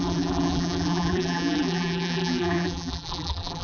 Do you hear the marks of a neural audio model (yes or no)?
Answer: yes